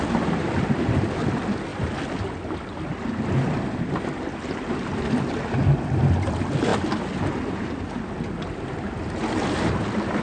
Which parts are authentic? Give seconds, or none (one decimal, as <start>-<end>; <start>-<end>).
0.0-10.2